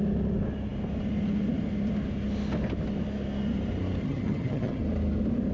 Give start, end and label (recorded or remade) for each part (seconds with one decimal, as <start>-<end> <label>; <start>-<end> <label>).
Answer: 0.0-4.0 recorded; 4.0-4.8 remade; 4.8-5.5 recorded